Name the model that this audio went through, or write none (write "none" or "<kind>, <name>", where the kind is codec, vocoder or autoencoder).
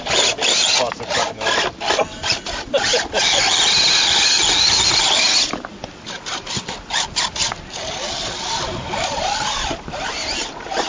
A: none